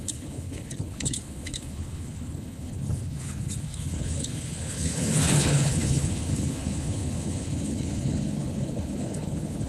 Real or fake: fake